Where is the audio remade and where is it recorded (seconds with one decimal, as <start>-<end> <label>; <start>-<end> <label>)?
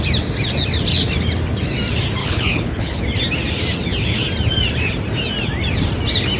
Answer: 0.0-2.2 recorded; 2.2-3.0 remade; 3.0-6.4 recorded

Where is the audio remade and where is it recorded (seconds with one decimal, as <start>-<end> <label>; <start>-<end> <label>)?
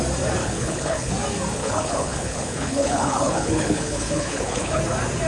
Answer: 0.0-0.4 recorded; 0.4-1.1 remade; 1.1-1.6 recorded; 1.6-4.8 remade; 4.8-5.3 recorded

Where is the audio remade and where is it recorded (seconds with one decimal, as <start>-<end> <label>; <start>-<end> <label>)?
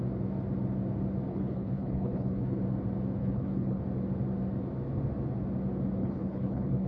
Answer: 0.0-1.3 recorded; 1.3-2.6 remade; 2.6-3.2 recorded; 3.2-3.8 remade; 3.8-6.0 recorded; 6.0-6.9 remade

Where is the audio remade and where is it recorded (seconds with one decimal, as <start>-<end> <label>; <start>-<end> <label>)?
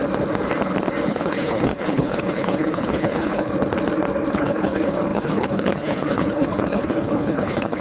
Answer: 0.0-1.1 recorded; 1.1-3.5 remade; 3.5-4.3 recorded; 4.3-7.8 remade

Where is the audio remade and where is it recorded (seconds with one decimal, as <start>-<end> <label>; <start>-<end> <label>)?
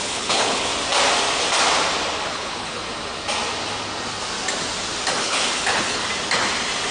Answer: 0.0-0.7 remade; 0.7-2.3 recorded; 2.3-2.8 remade; 2.8-5.2 recorded; 5.2-6.0 remade; 6.0-6.9 recorded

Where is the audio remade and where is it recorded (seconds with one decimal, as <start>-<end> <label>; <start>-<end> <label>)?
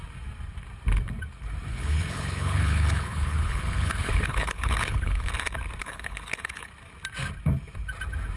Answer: 0.0-1.7 recorded; 1.7-5.3 remade; 5.3-5.8 recorded; 5.8-6.7 remade; 6.7-8.4 recorded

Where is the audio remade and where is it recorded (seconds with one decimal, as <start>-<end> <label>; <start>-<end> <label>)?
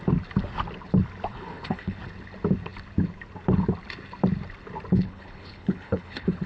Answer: 0.0-1.3 recorded; 1.3-2.0 remade; 2.0-4.9 recorded; 4.9-6.5 remade